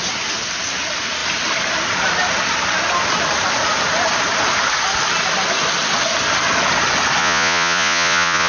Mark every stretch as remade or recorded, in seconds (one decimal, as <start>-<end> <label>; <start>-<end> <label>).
0.0-7.2 recorded; 7.2-8.5 remade